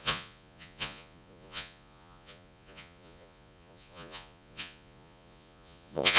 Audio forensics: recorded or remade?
remade